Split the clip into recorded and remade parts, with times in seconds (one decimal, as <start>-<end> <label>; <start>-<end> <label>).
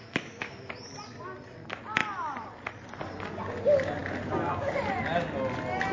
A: 0.0-0.7 remade; 0.7-5.9 recorded